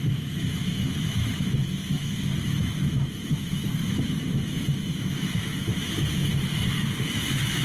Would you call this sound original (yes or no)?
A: no